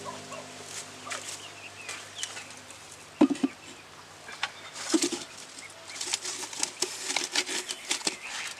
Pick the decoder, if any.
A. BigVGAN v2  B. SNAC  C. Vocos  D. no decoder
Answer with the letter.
D